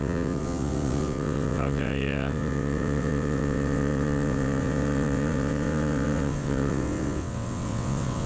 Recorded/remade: remade